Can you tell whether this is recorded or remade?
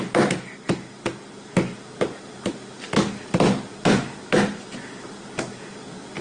recorded